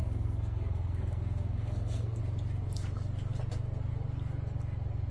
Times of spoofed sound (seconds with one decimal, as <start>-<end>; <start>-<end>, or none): 0.0-2.2